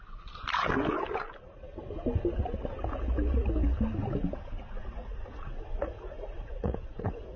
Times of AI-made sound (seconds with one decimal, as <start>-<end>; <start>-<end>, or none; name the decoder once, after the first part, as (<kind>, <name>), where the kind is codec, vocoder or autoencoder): 4.8-7.4 (vocoder, Vocos)